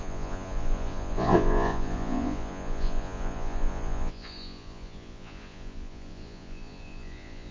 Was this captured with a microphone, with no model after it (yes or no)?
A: no